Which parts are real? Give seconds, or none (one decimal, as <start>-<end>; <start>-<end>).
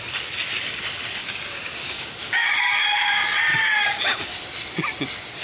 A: 0.0-1.2; 2.8-3.5; 4.3-5.4